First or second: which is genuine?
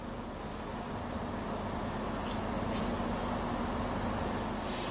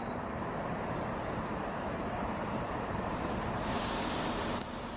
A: first